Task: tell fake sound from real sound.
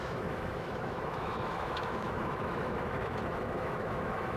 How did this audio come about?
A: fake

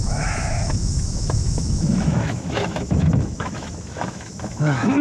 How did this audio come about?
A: fake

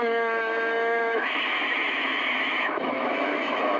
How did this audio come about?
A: fake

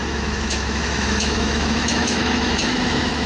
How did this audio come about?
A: fake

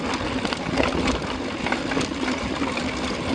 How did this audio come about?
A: real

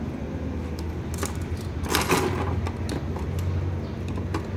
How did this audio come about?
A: real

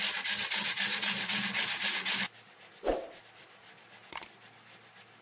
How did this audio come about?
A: real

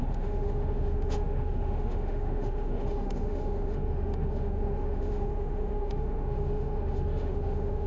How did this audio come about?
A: fake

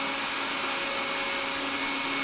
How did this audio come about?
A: real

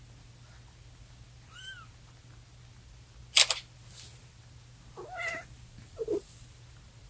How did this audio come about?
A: real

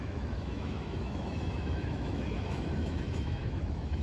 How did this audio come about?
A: fake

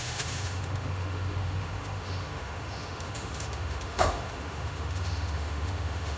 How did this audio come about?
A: fake